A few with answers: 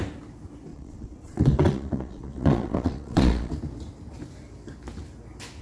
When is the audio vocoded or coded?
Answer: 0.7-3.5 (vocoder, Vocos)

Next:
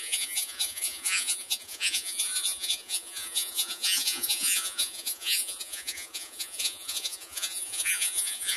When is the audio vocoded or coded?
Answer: 0.0-8.6 (vocoder, Vocos)

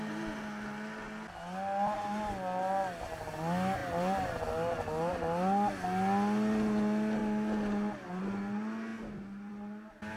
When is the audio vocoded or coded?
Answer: none